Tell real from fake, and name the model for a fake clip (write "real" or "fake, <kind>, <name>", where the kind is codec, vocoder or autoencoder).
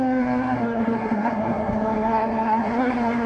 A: fake, codec, SNAC